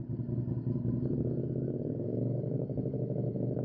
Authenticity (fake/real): fake